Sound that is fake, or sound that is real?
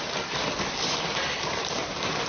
fake